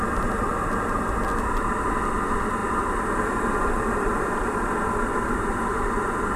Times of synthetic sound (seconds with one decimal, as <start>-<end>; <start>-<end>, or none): 2.6-6.4